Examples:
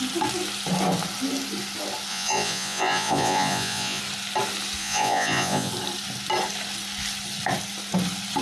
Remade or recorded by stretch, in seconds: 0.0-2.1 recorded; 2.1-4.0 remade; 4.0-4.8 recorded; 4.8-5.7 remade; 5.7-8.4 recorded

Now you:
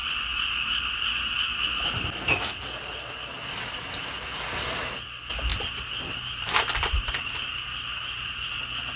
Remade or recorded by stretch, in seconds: 0.0-5.5 recorded; 5.5-8.5 remade; 8.5-9.0 recorded

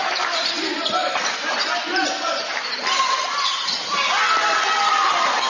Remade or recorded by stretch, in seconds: 0.0-5.5 recorded

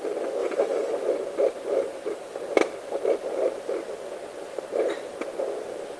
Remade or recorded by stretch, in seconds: 0.0-0.4 recorded; 0.4-3.6 remade; 3.6-4.5 recorded; 4.5-5.1 remade; 5.1-6.0 recorded